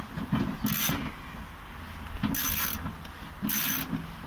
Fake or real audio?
real